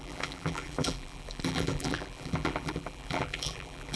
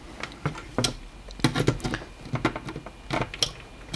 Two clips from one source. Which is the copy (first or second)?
first